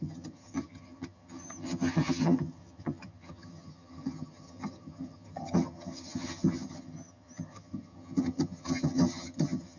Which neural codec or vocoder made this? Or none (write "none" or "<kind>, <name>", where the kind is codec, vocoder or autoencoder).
vocoder, HiFi-GAN